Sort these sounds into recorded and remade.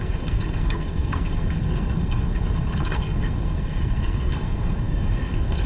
remade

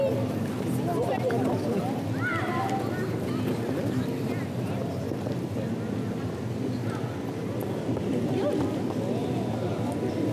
recorded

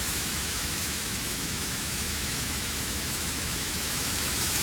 remade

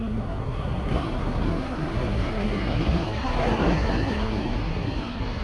remade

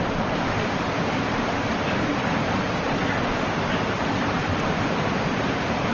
remade